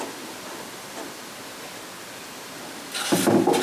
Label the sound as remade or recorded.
recorded